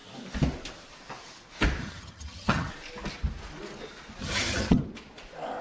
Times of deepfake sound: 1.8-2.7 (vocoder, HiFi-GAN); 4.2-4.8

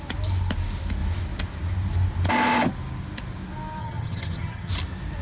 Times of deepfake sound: 3.8-4.7 (vocoder, HiFi-GAN)

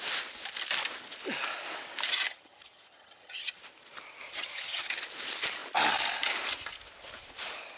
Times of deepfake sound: 2.3-3.6 (vocoder, HiFi-GAN); 4.3-4.9

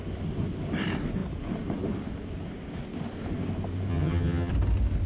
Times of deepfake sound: 3.9-4.5 (vocoder, HiFi-GAN)

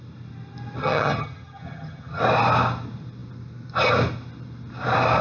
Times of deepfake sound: 0.8-2.2 (vocoder, HiFi-GAN)

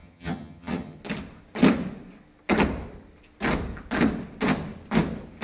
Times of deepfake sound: 0.0-1.0 (vocoder, HiFi-GAN)

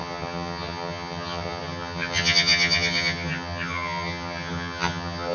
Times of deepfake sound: 0.0-5.3 (vocoder, HiFi-GAN)

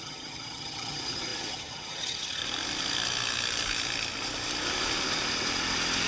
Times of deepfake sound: 0.0-2.4 (vocoder, HiFi-GAN)